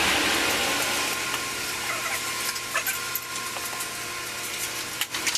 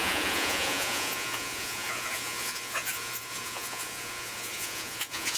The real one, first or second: first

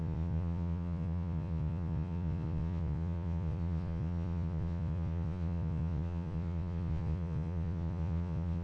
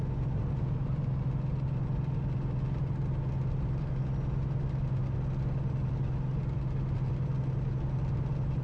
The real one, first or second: second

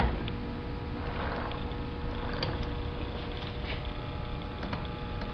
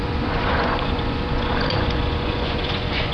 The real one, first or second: first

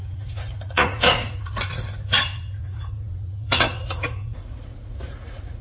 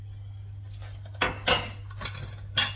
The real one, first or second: second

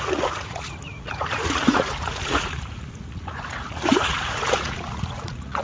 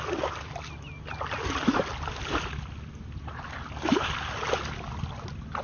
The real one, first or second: second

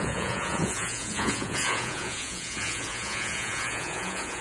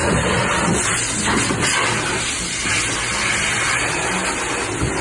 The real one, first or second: second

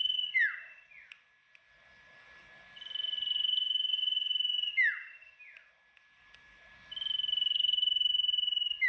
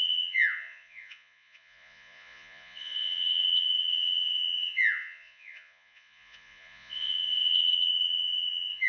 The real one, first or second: first